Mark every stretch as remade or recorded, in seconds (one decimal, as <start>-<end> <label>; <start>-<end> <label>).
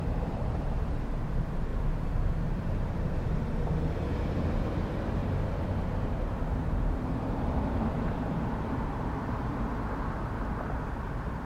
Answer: 0.0-11.4 remade